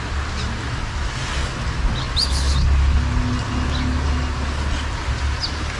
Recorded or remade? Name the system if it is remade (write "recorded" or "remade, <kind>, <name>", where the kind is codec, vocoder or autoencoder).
recorded